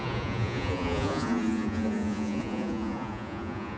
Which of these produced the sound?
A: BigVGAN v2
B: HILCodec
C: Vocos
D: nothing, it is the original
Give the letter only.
C